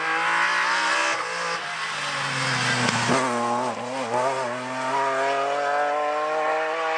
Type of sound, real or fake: real